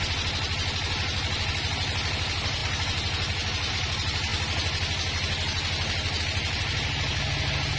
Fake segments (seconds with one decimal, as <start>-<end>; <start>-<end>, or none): none

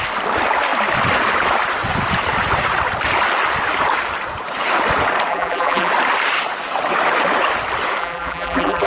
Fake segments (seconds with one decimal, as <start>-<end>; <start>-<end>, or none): 5.3-5.9; 8.0-8.9

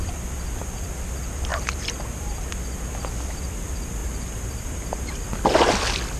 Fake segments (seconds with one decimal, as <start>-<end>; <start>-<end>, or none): 1.5-2.5; 4.0-5.2

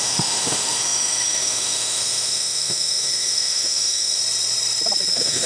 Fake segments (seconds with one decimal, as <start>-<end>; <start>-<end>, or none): 0.0-4.2; 5.1-5.5

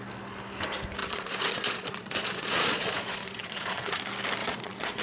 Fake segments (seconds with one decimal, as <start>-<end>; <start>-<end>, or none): 1.0-4.0; 4.4-5.0